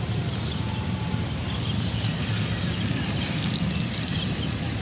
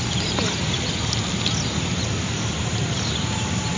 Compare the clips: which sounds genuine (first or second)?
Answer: second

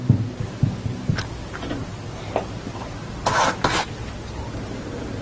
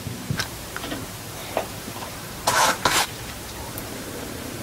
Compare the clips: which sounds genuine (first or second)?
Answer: first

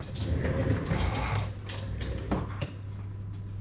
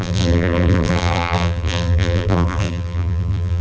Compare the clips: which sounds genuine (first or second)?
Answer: first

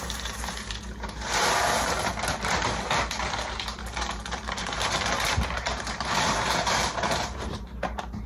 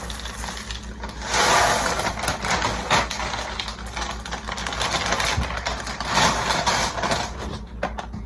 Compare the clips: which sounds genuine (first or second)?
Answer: second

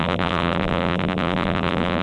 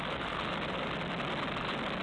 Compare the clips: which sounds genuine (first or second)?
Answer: second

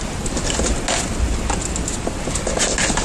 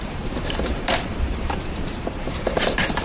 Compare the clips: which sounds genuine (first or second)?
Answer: first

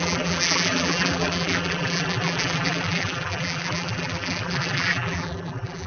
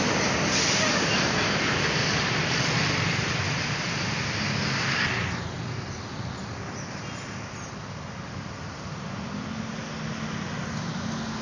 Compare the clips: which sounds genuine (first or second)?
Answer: second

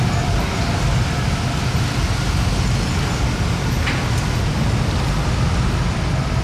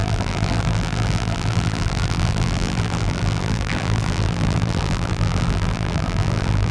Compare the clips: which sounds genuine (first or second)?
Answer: first